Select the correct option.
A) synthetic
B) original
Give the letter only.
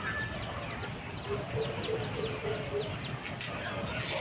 B